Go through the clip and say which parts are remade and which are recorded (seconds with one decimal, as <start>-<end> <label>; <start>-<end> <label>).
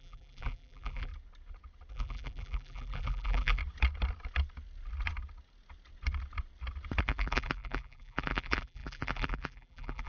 0.0-1.1 remade; 1.1-1.9 recorded; 1.9-3.6 remade; 3.6-7.0 recorded; 7.0-10.1 remade